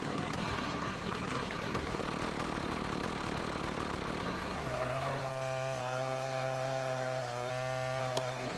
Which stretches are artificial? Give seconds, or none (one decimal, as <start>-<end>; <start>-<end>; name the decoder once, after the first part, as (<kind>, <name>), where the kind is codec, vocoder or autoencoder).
0.0-2.0 (codec, SNAC); 4.2-5.3; 5.8-7.5; 8.0-8.6